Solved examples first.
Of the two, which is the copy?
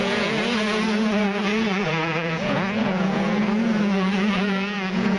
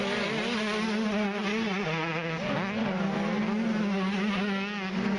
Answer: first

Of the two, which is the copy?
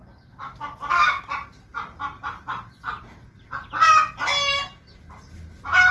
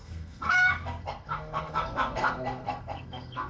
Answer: second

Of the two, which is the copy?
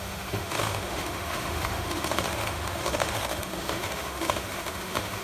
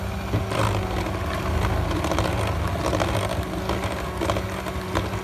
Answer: first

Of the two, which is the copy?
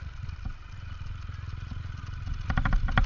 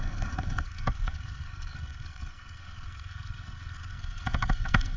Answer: second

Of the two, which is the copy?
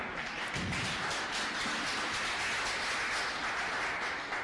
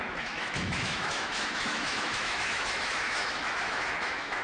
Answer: second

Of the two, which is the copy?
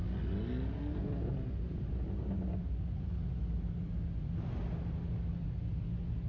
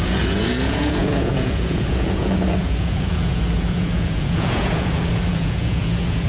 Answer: second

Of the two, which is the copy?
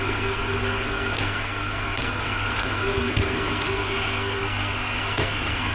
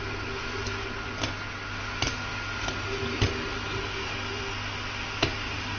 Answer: first